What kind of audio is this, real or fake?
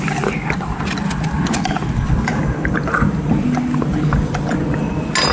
real